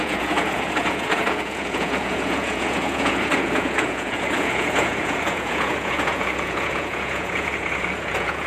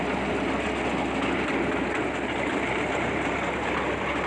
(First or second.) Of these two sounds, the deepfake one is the first